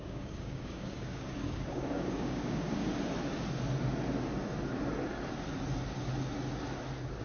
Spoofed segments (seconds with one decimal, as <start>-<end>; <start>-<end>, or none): 0.0-2.9